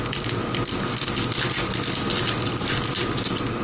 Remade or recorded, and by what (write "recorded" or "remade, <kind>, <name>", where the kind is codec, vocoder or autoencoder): recorded